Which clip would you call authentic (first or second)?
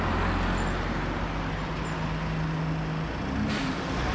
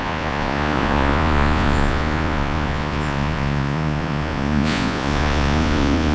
first